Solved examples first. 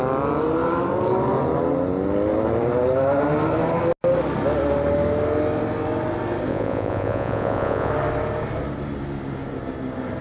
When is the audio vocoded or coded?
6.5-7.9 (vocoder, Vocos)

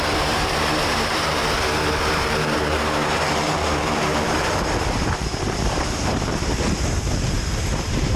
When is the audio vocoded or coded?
0.0-1.4 (vocoder, BigVGAN v2); 2.1-8.2